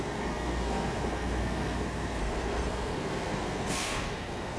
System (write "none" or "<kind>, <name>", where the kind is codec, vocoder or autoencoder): codec, SNAC